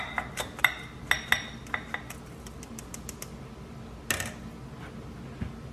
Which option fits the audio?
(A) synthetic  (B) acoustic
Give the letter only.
B